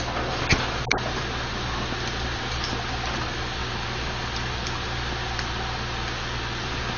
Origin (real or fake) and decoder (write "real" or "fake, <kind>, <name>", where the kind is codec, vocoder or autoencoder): real